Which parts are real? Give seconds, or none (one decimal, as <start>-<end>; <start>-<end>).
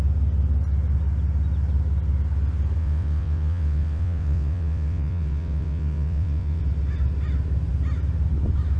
0.0-2.8; 6.6-8.8